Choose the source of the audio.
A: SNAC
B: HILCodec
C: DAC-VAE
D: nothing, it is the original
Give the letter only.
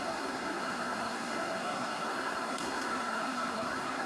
A